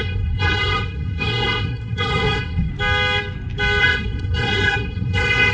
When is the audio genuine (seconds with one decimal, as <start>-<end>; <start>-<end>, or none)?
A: 2.7-3.8